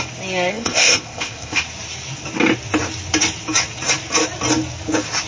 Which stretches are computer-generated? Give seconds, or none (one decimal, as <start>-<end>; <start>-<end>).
0.5-1.6